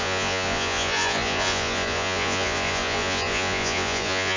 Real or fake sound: fake